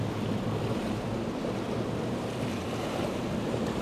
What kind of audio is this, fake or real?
real